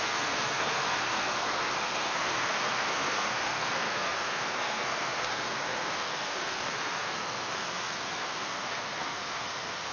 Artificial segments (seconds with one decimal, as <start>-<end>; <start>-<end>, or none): 0.0-9.9